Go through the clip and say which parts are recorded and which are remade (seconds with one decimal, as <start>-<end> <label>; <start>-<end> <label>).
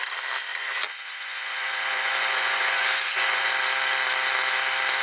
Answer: 0.0-0.5 recorded; 0.5-3.5 remade; 3.5-5.0 recorded